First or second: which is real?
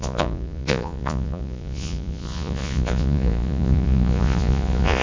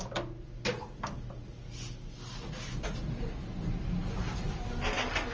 second